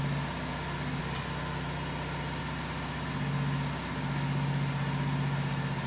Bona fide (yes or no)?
yes